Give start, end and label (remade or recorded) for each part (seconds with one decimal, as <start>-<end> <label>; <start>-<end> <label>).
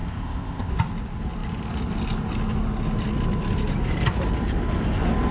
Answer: 0.0-0.7 remade; 0.7-5.3 recorded